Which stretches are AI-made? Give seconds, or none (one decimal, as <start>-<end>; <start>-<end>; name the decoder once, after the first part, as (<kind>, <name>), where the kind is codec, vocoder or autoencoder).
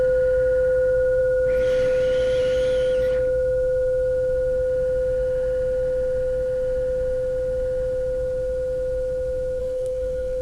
9.6-10.4 (codec, SNAC)